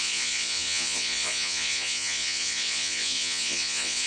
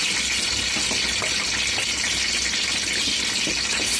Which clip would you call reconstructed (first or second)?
first